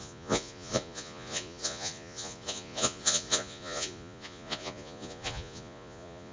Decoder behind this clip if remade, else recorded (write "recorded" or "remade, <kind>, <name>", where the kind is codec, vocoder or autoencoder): remade, vocoder, Vocos